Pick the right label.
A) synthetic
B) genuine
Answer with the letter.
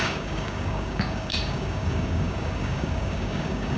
A